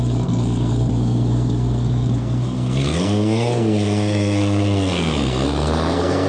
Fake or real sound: fake